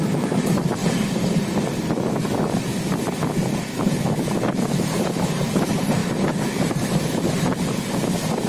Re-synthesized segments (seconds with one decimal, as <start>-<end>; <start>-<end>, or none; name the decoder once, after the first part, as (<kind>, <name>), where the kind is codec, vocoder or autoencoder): 0.0-0.8 (vocoder, BigVGAN v2); 1.8-2.7; 3.6-8.5